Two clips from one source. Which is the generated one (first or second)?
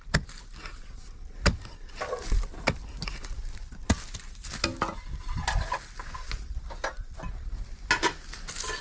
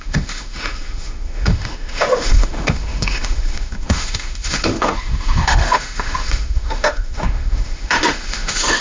second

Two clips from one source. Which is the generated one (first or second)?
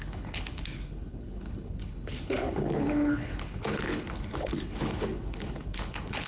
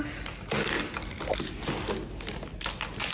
first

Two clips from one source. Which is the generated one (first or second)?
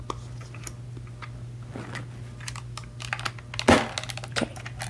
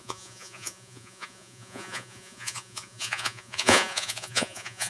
second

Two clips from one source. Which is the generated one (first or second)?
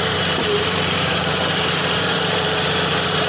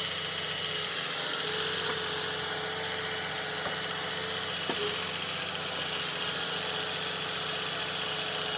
first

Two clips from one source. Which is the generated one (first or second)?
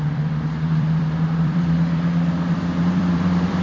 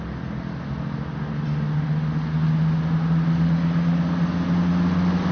first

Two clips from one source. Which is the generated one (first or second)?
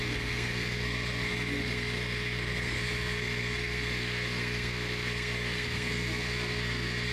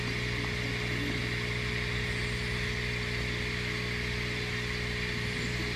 first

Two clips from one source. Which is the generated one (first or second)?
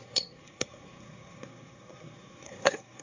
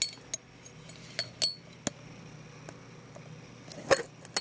first